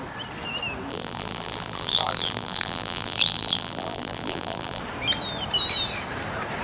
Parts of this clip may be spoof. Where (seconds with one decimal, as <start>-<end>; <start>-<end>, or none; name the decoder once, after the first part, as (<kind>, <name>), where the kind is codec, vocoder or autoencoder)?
0.9-4.8 (vocoder, BigVGAN v2)